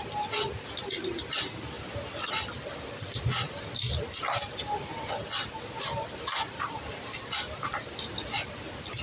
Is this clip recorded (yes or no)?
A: yes